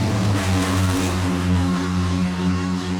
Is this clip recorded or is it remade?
remade